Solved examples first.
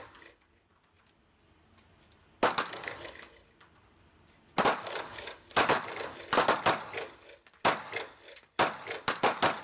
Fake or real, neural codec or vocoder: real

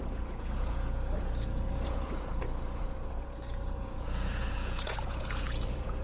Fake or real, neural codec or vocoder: fake, vocoder, Vocos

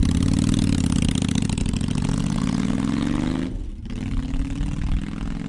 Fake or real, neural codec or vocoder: real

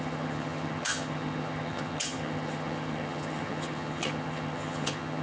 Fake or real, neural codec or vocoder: fake, vocoder, HiFi-GAN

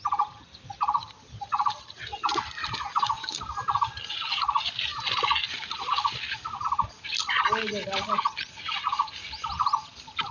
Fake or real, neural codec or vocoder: real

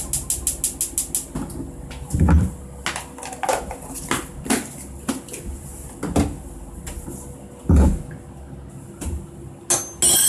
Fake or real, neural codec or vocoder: real